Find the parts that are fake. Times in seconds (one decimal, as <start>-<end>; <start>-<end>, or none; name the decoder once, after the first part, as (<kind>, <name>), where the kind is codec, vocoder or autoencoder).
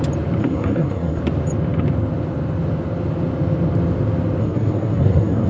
0.4-1.2 (codec, SNAC); 4.4-5.5